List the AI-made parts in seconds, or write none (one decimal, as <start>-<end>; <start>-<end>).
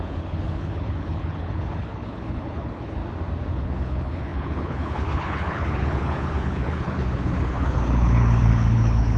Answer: 0.0-3.0; 3.5-9.2